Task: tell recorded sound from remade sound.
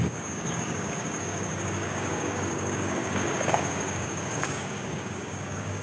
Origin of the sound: remade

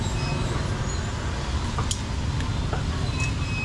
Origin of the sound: recorded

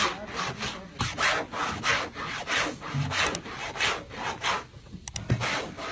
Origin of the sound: recorded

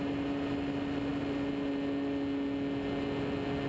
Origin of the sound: recorded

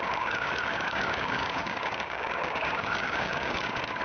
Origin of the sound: remade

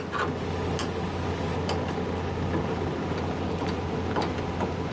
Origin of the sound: recorded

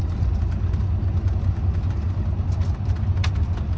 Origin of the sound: recorded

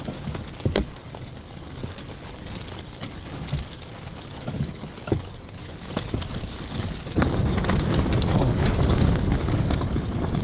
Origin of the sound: remade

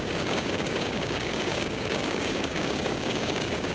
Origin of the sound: remade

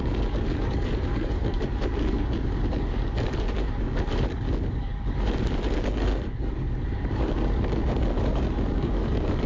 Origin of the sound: remade